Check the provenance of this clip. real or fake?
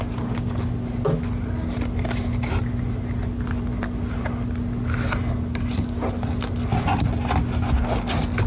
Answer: real